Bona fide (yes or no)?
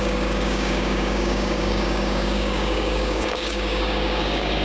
no